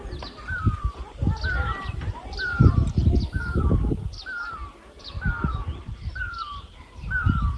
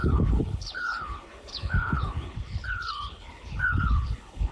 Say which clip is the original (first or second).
first